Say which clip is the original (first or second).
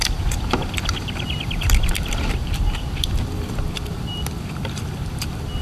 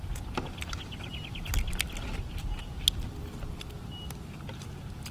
second